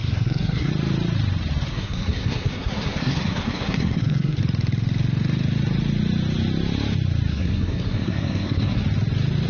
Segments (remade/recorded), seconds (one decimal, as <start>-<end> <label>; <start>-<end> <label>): 0.0-0.7 remade; 0.7-1.7 recorded; 1.7-4.4 remade; 4.4-7.3 recorded; 7.3-8.8 remade; 8.8-9.5 recorded